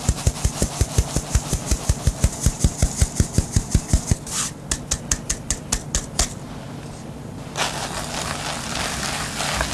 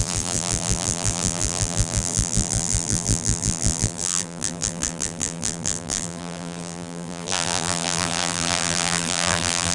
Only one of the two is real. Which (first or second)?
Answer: first